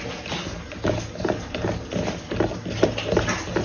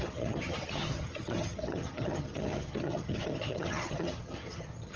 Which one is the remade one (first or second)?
second